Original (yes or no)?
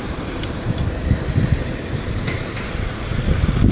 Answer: no